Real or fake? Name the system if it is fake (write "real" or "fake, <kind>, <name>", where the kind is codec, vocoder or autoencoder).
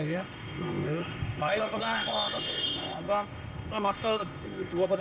fake, codec, ZipCodec